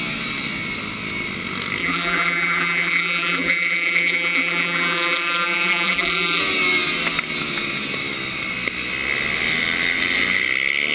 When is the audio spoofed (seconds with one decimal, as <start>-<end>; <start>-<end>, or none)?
1.8-6.4